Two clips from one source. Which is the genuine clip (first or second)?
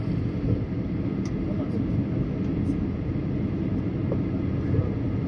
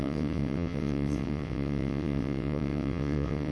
first